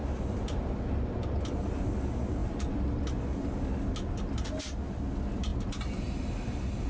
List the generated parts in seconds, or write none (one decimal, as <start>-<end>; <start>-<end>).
none